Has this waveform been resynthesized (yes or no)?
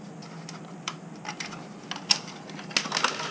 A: no